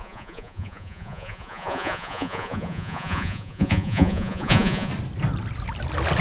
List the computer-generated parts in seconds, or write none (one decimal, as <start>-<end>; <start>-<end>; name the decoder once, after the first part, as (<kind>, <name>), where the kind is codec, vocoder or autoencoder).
0.0-4.9 (vocoder, Vocos)